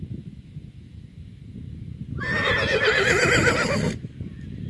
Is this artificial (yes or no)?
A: no